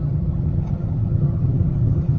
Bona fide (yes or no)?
no